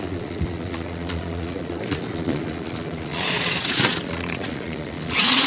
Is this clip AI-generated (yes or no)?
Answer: yes